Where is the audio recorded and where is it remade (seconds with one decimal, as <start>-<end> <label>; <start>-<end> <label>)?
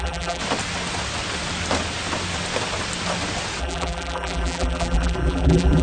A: 0.0-0.4 remade; 0.4-3.6 recorded; 3.6-5.8 remade